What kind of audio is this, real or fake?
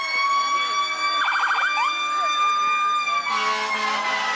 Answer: real